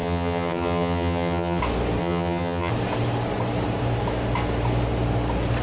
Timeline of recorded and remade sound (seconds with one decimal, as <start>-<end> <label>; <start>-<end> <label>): 0.0-1.6 remade; 1.6-2.0 recorded; 2.0-2.7 remade; 2.7-5.6 recorded